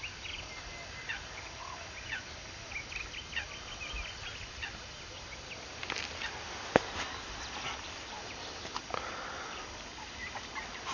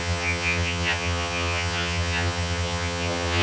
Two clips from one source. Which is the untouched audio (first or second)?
first